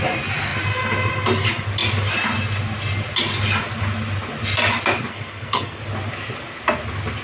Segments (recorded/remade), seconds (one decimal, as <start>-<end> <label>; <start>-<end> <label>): 0.0-5.1 recorded; 5.1-5.8 remade; 5.8-7.2 recorded